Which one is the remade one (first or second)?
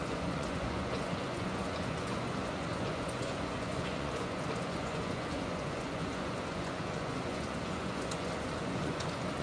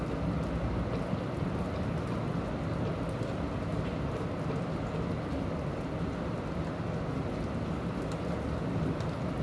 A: first